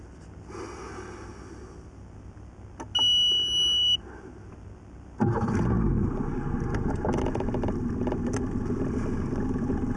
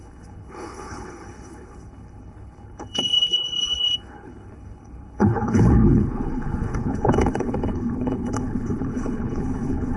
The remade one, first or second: second